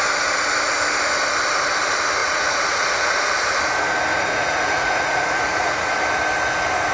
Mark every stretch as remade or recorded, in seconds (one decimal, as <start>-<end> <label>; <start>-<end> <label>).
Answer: 0.0-2.2 recorded; 2.2-3.2 remade; 3.2-4.1 recorded; 4.1-5.9 remade; 5.9-6.9 recorded